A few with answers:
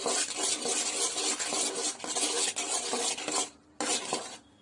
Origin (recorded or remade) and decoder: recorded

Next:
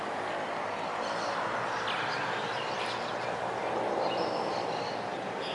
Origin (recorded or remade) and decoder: recorded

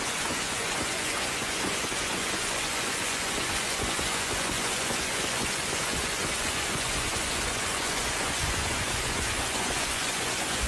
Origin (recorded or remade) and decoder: remade, vocoder, Vocos